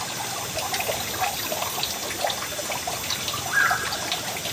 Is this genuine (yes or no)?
yes